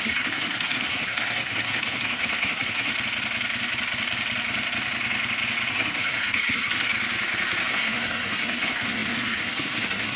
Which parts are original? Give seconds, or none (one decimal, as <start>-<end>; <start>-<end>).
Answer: 2.9-5.7; 6.9-7.7